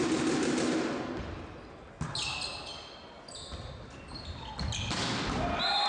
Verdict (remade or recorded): recorded